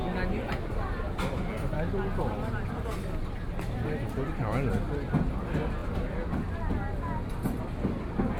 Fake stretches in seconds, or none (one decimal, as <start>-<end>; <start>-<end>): none